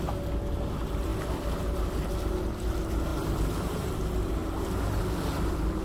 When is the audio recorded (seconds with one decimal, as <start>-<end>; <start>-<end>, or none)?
0.0-3.1; 3.9-5.8